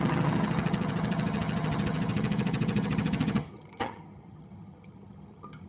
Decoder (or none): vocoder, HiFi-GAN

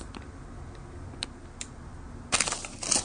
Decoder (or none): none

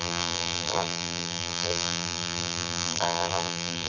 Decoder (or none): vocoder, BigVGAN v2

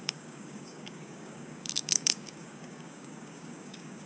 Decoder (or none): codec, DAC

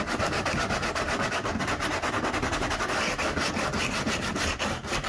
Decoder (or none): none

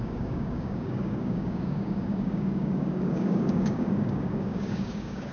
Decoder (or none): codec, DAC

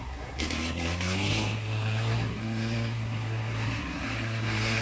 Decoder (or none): codec, SNAC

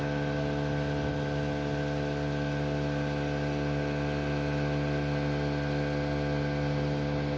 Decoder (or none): none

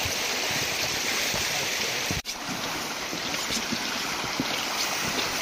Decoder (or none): vocoder, BigVGAN v2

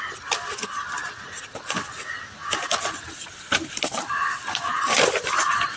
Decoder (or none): none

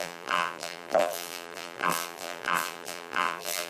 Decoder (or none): vocoder, BigVGAN v2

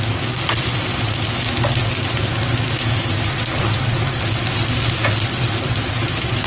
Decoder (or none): none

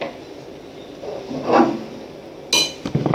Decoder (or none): none